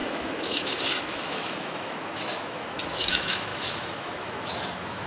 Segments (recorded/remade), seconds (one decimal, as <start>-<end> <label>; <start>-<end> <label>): 0.0-5.1 remade